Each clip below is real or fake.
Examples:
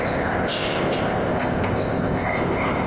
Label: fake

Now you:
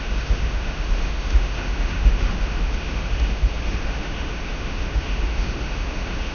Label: fake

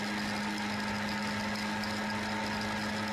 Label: real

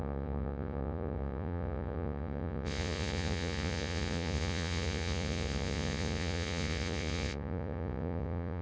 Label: fake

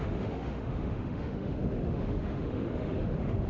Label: fake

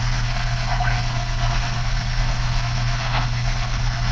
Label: fake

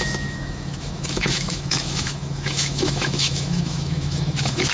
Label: fake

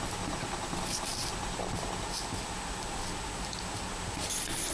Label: real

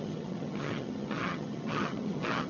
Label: fake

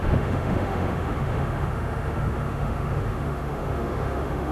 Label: fake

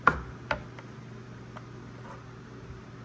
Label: real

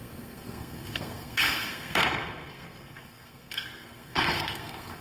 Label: fake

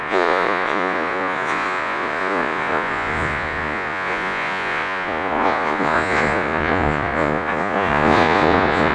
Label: fake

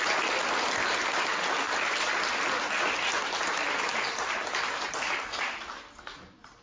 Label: real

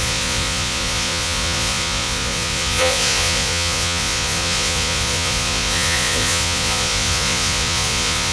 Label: fake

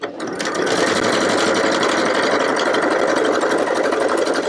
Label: real